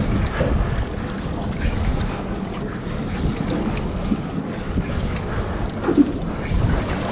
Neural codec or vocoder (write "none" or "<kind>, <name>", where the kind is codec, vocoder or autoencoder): none